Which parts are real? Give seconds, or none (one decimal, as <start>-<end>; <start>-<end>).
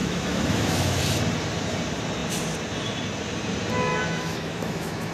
1.0-3.9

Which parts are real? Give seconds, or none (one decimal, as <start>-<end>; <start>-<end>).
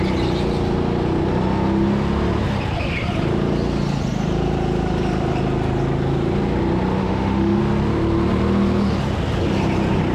0.0-7.0; 7.6-10.1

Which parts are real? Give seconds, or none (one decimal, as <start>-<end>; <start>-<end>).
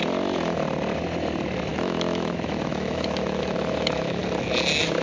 0.0-1.7; 4.2-5.0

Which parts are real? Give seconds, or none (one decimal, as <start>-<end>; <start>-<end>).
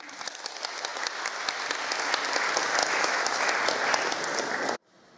0.0-2.8; 3.5-5.2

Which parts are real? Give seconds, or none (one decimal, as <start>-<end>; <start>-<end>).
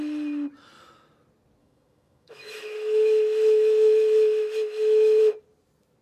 0.0-1.6; 5.2-6.0